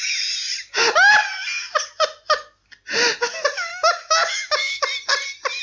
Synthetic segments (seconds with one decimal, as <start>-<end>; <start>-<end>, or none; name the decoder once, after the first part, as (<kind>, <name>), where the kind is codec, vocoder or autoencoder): 3.7-4.8 (autoencoder, DAC-VAE)